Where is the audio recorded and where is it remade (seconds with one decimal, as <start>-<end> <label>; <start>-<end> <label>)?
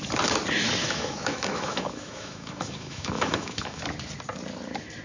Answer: 0.0-0.8 recorded; 0.8-3.8 remade; 3.8-5.0 recorded